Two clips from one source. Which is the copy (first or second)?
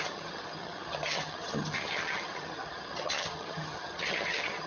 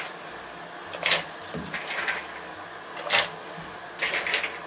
first